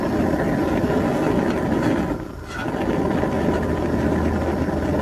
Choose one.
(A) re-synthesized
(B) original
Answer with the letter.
B